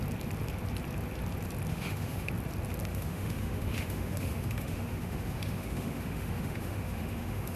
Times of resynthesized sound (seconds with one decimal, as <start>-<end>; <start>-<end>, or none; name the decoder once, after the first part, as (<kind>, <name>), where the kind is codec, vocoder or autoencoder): 1.7-2.3 (autoencoder, DAC-VAE); 2.9-7.6